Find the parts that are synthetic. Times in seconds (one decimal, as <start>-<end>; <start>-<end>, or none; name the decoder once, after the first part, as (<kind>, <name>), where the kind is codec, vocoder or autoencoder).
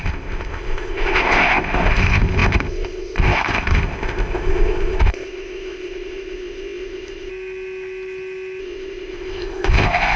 0.0-7.3 (codec, ZipCodec); 8.6-10.2